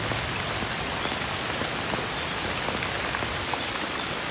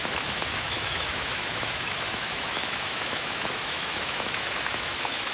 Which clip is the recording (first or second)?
first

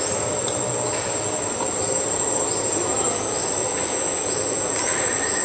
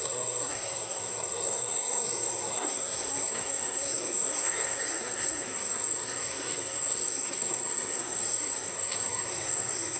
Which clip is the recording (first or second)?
first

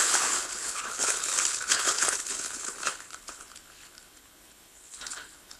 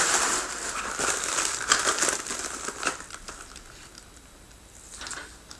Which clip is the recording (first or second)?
second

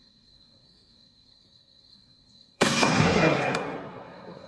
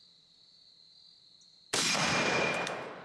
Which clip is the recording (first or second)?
second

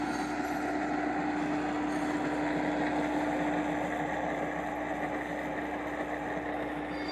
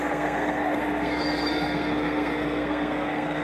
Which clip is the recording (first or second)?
first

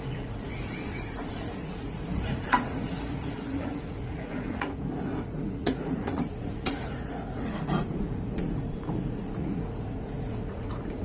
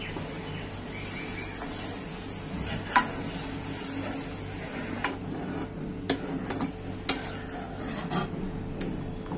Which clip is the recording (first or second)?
second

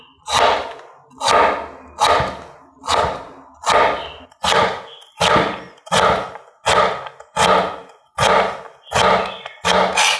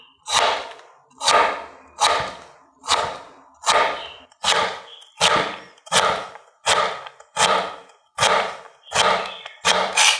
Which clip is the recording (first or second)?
first